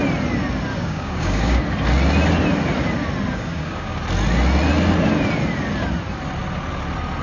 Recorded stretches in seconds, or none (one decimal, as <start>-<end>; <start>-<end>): 0.0-0.7; 1.6-3.3; 4.0-7.2